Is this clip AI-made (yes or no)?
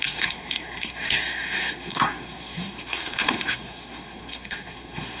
yes